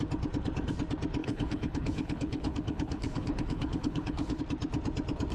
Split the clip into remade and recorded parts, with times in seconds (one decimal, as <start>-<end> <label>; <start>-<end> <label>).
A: 0.0-1.2 recorded; 1.2-4.4 remade; 4.4-5.3 recorded